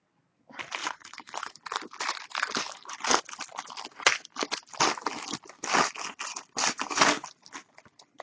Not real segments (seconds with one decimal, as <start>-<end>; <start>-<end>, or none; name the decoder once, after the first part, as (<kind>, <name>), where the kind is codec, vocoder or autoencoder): 0.8-1.5 (codec, HILCodec)